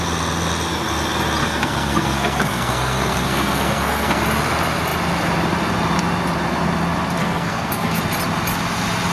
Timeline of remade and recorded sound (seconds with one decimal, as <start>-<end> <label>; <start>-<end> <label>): 0.0-1.4 recorded; 1.4-4.2 remade; 4.2-7.2 recorded; 7.2-8.0 remade; 8.0-9.1 recorded